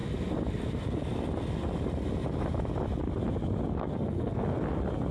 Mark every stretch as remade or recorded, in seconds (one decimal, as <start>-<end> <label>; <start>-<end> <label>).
0.0-3.8 recorded; 3.8-4.4 remade; 4.4-5.1 recorded